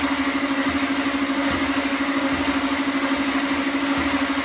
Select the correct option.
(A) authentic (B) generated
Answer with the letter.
A